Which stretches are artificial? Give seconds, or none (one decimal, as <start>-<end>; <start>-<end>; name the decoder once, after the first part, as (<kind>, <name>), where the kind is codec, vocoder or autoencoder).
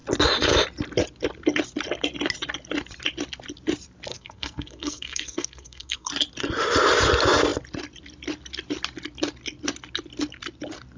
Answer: 4.1-6.1 (codec, SNAC)